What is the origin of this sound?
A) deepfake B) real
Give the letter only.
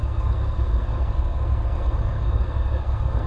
A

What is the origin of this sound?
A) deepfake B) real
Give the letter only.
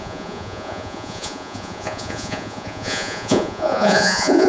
A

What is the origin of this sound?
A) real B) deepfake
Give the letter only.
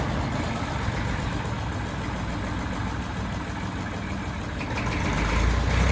A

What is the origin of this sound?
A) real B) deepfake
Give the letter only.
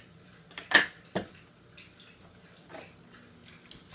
A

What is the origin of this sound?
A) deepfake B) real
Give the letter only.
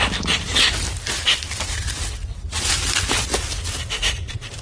B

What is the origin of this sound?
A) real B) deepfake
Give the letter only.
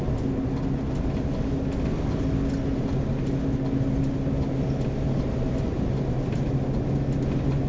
A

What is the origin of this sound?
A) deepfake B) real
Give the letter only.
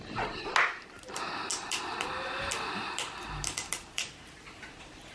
B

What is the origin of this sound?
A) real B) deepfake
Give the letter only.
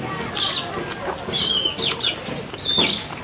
A